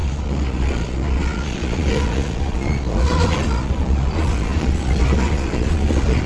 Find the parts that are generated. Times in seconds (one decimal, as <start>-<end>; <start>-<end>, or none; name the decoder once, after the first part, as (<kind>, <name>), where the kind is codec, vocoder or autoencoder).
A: 0.0-6.3 (vocoder, Vocos)